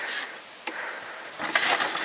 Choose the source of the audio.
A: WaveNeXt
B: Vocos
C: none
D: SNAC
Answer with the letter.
C